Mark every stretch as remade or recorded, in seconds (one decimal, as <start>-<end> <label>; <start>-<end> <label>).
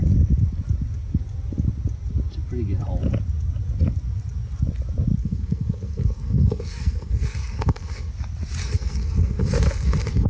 0.0-5.2 recorded; 5.2-8.1 remade; 8.1-8.6 recorded; 8.6-10.3 remade